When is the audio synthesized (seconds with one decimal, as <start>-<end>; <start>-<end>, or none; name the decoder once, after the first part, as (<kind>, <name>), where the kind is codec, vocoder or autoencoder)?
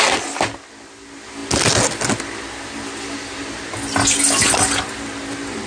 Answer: none